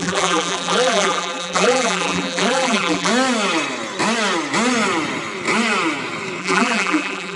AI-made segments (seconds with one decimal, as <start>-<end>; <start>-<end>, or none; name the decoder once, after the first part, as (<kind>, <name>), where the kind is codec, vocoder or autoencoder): 0.0-3.1 (vocoder, BigVGAN v2); 6.4-7.4